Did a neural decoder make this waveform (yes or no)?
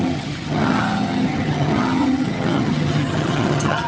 yes